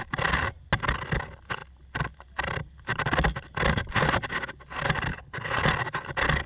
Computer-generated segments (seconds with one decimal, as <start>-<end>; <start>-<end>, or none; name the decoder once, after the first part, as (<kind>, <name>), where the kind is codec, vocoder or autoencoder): 5.1-5.6 (codec, HILCodec)